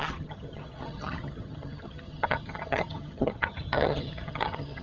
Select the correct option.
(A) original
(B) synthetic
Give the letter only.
B